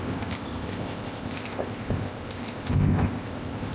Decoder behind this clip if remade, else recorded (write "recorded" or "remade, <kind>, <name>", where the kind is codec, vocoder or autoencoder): remade, codec, ZipCodec